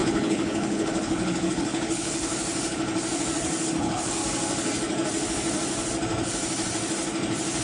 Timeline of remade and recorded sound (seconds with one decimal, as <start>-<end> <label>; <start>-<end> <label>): 0.0-2.3 remade; 2.3-3.8 recorded; 3.8-4.2 remade; 4.2-7.6 recorded